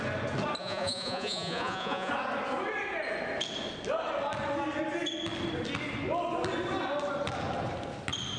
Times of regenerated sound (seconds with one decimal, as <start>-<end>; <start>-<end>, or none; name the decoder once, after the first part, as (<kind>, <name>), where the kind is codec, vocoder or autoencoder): 0.6-2.1 (vocoder, Vocos)